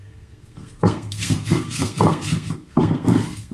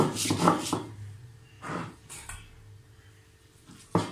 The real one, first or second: second